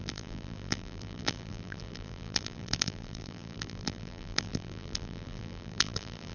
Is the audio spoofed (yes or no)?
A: yes